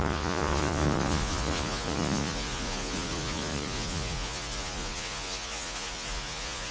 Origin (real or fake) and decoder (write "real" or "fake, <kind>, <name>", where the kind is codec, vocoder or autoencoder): fake, vocoder, Vocos